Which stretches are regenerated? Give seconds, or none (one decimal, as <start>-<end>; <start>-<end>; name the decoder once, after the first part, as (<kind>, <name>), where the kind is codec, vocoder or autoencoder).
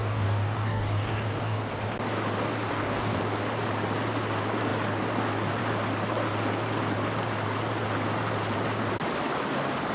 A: 0.0-1.6 (codec, DAC); 2.7-3.2